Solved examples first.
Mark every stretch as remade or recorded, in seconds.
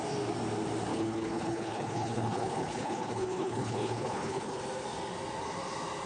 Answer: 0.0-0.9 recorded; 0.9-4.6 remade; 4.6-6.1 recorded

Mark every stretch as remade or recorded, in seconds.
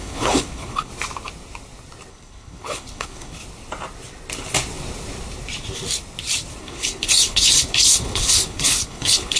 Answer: 0.0-0.9 remade; 0.9-2.1 recorded; 2.1-3.4 remade; 3.4-6.6 recorded; 6.6-9.4 remade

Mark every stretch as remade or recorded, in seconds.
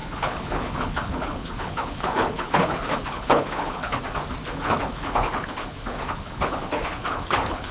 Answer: 0.0-4.0 remade; 4.0-4.4 recorded; 4.4-7.7 remade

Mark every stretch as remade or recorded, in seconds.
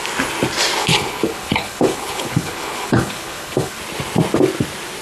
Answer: 0.0-0.8 recorded; 0.8-3.8 remade; 3.8-5.0 recorded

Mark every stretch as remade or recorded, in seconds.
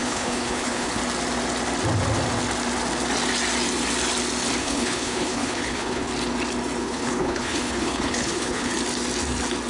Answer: 0.0-1.0 remade; 1.0-4.6 recorded; 4.6-6.1 remade; 6.1-6.8 recorded; 6.8-8.7 remade; 8.7-9.7 recorded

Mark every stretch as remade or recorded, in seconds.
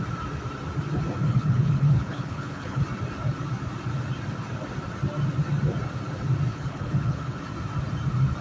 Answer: 0.0-1.2 recorded; 1.2-2.8 remade; 2.8-6.5 recorded; 6.5-7.4 remade; 7.4-8.4 recorded